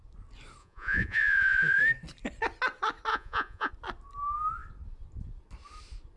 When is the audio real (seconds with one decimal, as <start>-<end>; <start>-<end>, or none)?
0.0-0.6; 1.8-3.1; 3.7-6.2